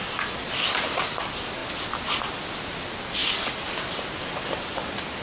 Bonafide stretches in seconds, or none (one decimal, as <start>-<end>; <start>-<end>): 0.0-5.2